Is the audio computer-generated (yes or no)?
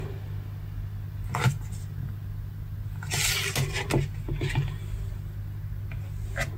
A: no